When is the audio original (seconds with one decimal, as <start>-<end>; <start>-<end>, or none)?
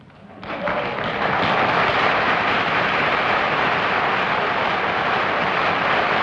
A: 0.0-1.9; 3.7-6.2